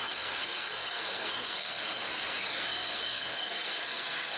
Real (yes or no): no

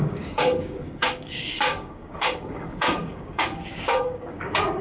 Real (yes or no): no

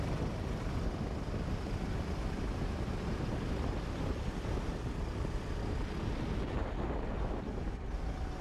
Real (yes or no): yes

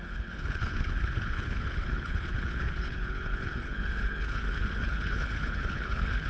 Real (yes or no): no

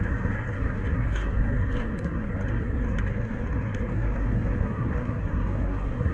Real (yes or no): no